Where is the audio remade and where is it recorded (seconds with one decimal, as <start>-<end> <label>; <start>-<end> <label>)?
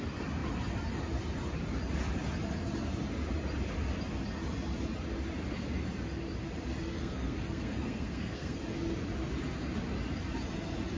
0.0-6.9 recorded; 6.9-8.6 remade; 8.6-11.0 recorded